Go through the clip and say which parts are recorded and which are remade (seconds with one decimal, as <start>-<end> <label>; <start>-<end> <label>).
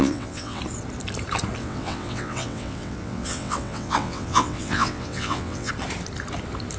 0.0-0.6 remade; 0.6-1.6 recorded; 1.6-5.7 remade; 5.7-6.8 recorded